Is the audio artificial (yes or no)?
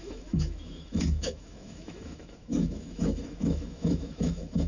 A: yes